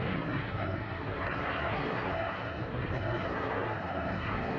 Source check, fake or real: fake